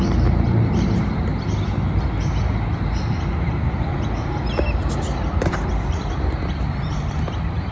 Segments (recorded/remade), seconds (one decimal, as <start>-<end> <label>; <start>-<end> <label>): 0.0-1.3 remade; 1.3-5.3 recorded; 5.3-7.7 remade